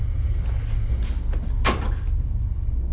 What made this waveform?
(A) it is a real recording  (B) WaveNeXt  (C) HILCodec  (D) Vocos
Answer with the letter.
A